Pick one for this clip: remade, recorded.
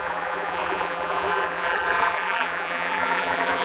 remade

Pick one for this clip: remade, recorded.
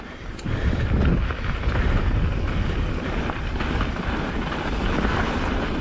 recorded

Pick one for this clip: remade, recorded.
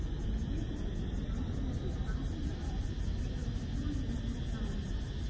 recorded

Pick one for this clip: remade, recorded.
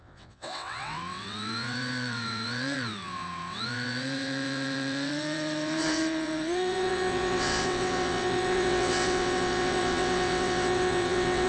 remade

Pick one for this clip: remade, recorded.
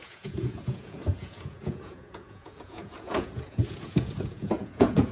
remade